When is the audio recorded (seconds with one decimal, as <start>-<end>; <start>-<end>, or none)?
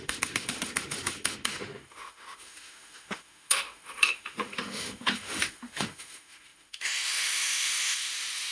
none